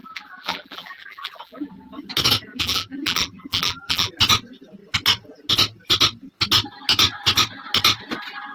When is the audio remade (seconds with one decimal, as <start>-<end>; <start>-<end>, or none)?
0.0-1.7; 2.5-4.1